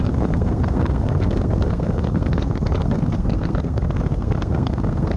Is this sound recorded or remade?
remade